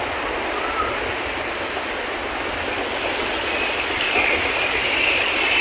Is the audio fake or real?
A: real